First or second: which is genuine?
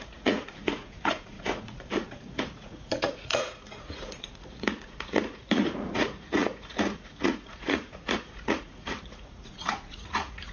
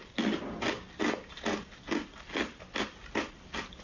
second